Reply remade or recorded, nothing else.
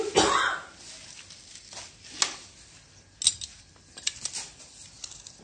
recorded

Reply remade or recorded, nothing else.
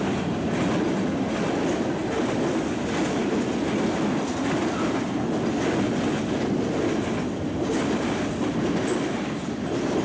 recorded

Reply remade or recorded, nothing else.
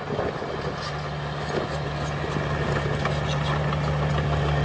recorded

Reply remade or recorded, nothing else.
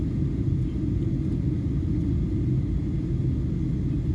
recorded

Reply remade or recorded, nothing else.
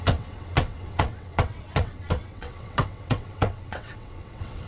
remade